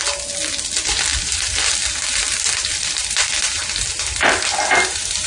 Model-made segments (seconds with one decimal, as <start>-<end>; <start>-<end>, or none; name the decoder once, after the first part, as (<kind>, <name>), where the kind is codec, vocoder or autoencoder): 1.1-4.3 (vocoder, BigVGAN v2)